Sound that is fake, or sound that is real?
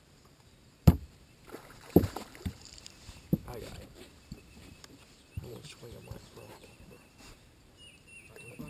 fake